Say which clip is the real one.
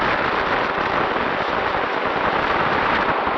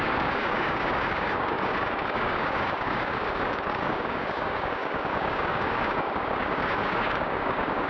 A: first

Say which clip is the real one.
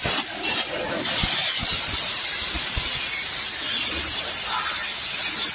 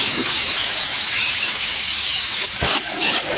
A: first